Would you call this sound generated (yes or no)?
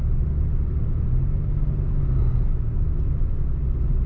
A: no